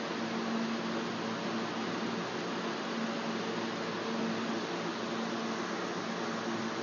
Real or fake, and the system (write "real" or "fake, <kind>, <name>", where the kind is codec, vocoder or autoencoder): real